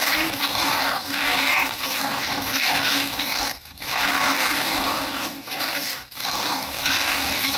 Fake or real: fake